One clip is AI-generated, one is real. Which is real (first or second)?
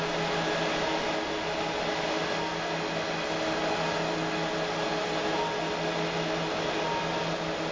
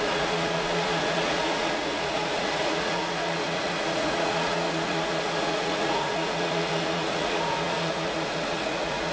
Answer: first